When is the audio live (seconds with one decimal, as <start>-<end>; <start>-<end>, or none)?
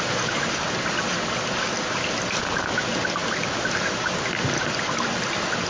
0.0-5.7